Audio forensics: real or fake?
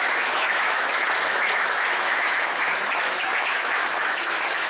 fake